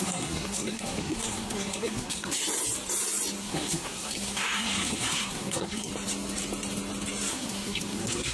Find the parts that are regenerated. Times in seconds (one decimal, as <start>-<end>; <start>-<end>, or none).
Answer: 0.0-2.4; 3.4-5.9; 7.3-8.3